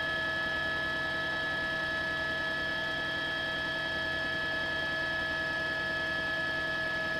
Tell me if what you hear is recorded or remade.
recorded